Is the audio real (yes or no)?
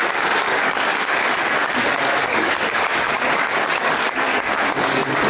no